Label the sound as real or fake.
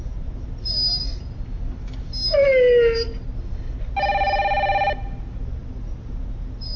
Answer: real